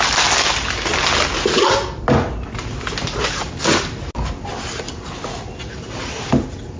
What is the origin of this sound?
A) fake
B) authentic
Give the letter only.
B